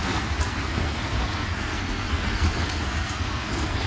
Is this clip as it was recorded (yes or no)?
no